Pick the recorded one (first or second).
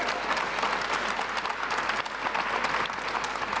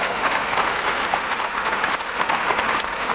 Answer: first